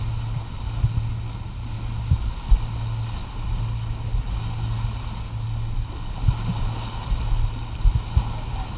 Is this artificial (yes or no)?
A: no